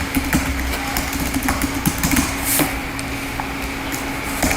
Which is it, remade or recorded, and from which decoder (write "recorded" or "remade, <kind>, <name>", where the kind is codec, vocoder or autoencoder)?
recorded